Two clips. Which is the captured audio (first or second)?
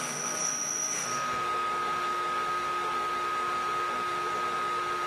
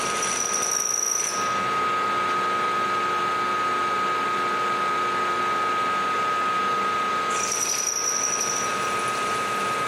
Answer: second